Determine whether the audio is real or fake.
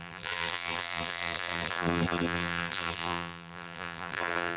fake